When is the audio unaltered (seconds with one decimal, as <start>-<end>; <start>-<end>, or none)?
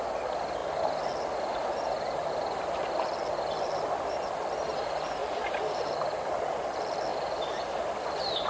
0.0-0.6; 4.8-5.2; 5.9-7.1